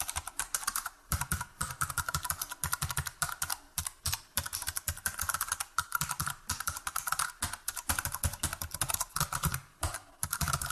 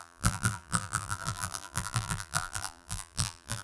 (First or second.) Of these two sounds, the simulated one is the second